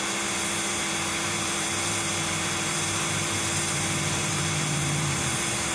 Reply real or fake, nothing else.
fake